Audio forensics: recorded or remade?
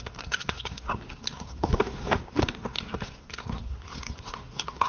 remade